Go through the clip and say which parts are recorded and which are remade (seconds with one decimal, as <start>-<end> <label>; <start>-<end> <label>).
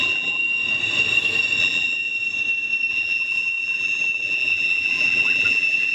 0.0-0.4 remade; 0.4-1.6 recorded; 1.6-2.1 remade; 2.1-2.9 recorded; 2.9-5.9 remade